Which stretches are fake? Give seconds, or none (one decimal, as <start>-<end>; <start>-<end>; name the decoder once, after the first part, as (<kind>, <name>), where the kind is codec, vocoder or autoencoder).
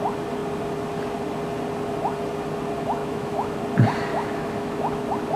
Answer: 3.0-3.6 (autoencoder, DAC-VAE); 4.1-5.0